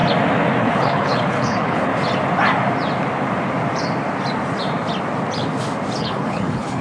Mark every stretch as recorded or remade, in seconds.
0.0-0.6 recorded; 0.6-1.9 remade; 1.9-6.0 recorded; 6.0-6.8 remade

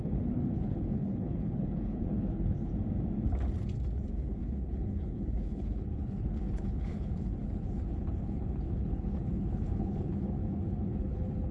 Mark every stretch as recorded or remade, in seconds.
0.0-2.7 remade; 2.7-4.1 recorded; 4.1-11.5 remade